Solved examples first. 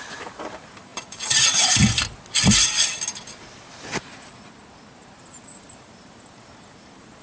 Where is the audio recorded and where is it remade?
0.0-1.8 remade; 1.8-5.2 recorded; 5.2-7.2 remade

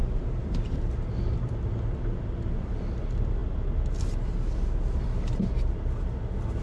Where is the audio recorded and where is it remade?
0.0-1.1 remade; 1.1-6.6 recorded

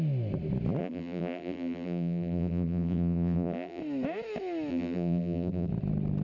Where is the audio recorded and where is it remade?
0.0-0.8 recorded; 0.8-3.8 remade; 3.8-4.7 recorded; 4.7-5.7 remade; 5.7-6.2 recorded

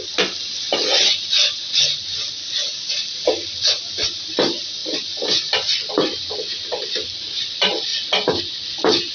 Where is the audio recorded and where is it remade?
0.0-9.1 recorded

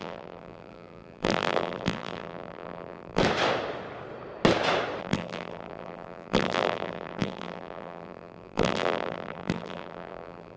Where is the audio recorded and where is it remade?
0.0-3.2 remade; 3.2-5.0 recorded; 5.0-10.6 remade